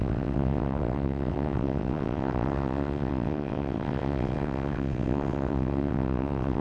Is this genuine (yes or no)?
no